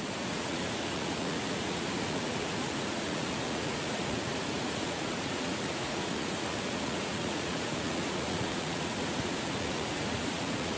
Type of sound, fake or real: fake